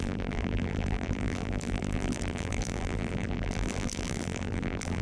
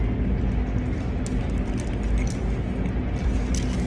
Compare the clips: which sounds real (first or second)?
second